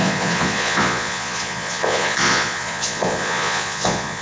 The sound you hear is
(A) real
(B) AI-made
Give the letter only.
B